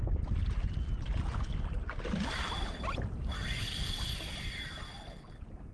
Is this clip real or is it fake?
real